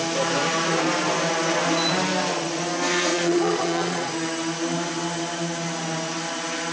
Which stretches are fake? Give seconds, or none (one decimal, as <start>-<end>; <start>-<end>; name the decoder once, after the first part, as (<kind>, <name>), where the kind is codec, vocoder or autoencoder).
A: 3.1-4.1 (vocoder, Vocos)